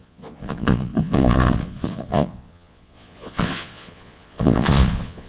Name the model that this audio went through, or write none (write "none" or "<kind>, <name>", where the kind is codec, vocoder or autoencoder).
vocoder, Vocos